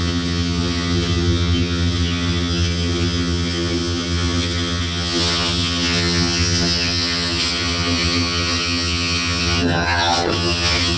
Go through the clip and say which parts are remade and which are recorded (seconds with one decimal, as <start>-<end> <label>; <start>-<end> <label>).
0.0-11.0 remade